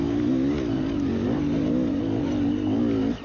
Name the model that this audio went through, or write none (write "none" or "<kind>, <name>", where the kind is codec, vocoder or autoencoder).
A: none